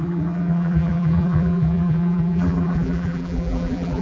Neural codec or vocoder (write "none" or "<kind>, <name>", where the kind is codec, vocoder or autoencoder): vocoder, BigVGAN v2